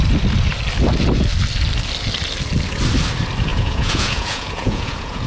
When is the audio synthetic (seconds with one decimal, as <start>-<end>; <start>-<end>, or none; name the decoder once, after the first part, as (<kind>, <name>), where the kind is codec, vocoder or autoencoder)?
3.5-5.3 (vocoder, Vocos)